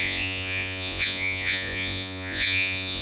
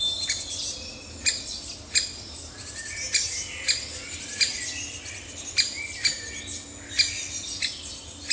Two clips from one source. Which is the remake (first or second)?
first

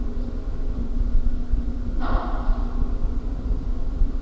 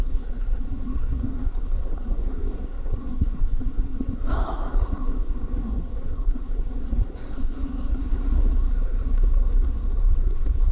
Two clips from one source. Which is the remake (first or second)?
second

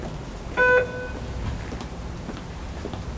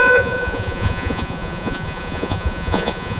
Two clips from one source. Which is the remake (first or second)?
second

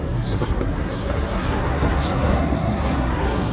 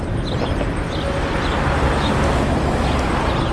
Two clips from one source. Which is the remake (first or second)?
first